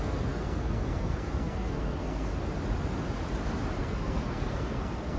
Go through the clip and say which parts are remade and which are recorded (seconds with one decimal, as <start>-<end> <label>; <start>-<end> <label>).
0.0-2.3 remade; 2.3-3.8 recorded; 3.8-5.2 remade